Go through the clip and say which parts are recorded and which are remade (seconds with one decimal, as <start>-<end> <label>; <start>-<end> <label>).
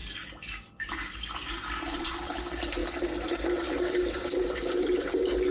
0.0-0.7 recorded; 0.7-5.5 remade